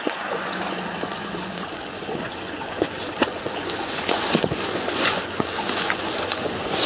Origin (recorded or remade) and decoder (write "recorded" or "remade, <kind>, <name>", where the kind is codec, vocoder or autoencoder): remade, vocoder, Vocos